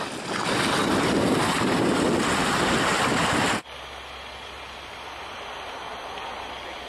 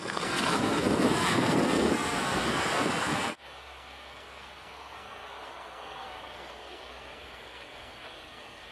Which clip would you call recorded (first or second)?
first